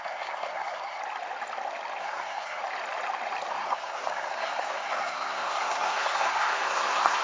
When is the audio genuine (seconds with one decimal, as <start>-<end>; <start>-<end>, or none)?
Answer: 1.0-2.0; 2.6-3.5